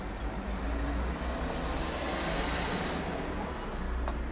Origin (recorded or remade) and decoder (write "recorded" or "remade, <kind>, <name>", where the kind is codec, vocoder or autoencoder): recorded